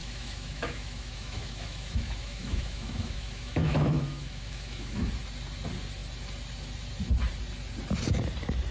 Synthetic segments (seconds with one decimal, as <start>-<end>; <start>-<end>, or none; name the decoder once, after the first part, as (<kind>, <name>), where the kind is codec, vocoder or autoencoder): 0.0-5.1 (autoencoder, DAC-VAE)